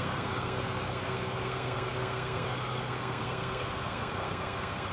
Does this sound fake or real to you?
fake